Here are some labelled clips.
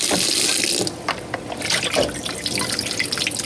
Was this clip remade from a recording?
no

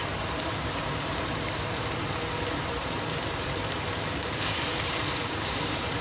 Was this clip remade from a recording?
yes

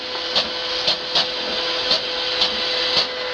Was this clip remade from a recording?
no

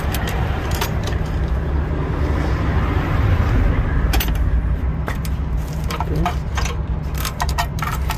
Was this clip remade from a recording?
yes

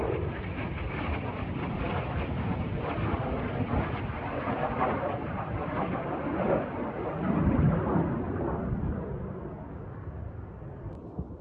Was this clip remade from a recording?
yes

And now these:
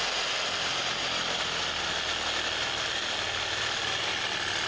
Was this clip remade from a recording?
no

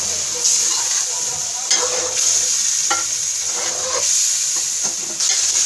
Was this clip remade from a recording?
no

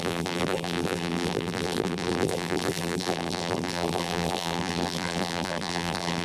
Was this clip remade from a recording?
yes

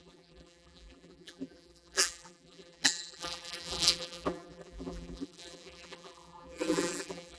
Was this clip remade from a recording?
yes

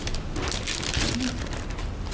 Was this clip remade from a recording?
no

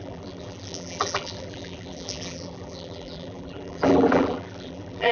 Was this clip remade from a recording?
yes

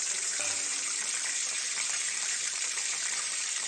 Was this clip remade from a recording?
yes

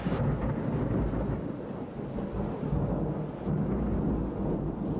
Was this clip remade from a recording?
no